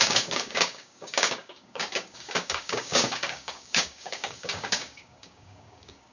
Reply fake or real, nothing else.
fake